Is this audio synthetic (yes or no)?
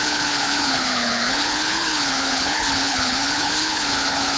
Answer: yes